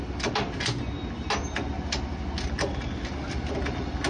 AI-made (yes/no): no